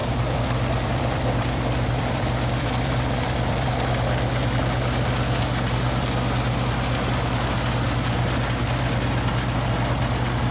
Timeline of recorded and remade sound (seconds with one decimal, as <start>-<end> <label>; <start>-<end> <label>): 0.0-3.7 remade; 3.7-10.5 recorded